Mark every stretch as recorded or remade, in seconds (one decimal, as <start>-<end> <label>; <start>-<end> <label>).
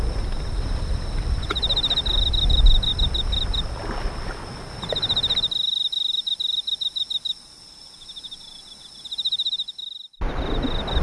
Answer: 0.0-11.0 recorded